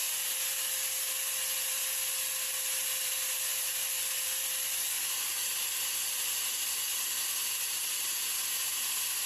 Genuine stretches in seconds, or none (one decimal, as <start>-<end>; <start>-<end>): 0.0-9.3